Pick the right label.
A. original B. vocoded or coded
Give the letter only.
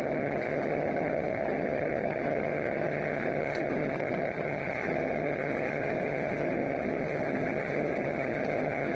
B